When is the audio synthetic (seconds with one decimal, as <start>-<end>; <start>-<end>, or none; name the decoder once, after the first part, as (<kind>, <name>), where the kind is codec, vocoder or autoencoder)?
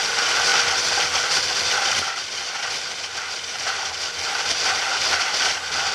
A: none